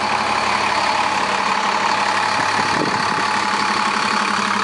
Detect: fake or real real